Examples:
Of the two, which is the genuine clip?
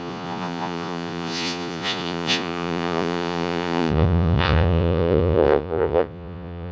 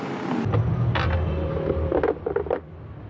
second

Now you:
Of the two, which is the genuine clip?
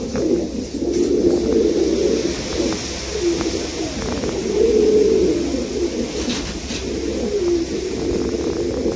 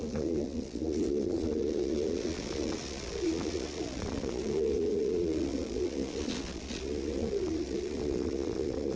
first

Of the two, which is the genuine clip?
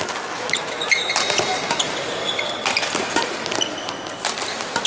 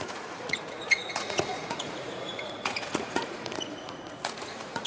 first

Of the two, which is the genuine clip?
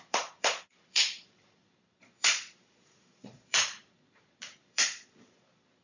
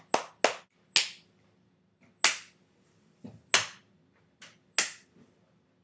second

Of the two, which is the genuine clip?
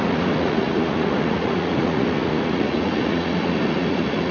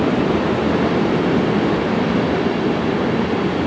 second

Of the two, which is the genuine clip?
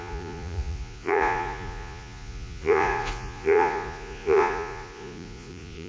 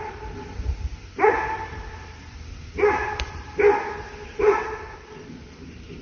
second